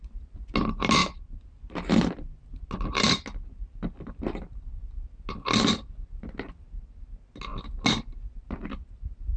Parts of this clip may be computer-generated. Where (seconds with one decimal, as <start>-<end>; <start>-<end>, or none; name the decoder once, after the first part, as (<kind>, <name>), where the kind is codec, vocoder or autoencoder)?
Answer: none